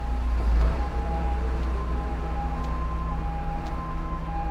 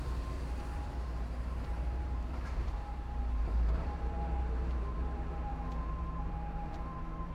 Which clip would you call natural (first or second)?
first